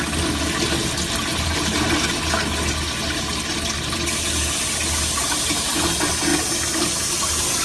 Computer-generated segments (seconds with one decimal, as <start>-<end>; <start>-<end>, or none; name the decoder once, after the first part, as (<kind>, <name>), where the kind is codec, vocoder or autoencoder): 1.3-2.1 (vocoder, BigVGAN v2); 5.2-5.7; 6.3-7.6